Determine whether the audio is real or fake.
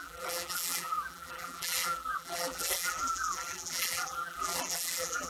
fake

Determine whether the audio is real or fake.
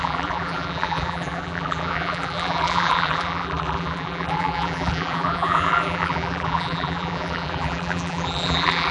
fake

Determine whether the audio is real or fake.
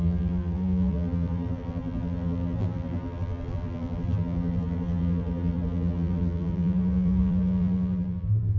fake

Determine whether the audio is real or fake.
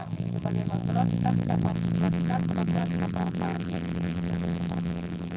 fake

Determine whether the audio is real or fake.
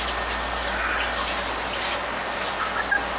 real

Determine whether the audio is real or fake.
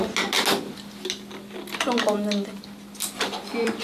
real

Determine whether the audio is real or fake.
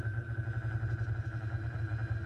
fake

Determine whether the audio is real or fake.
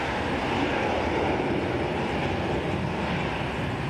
real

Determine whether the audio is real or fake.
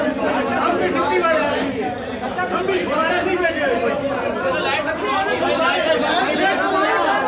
real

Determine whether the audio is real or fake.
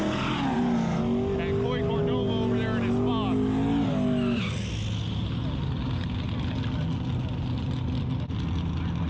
real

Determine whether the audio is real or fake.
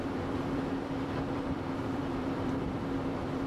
fake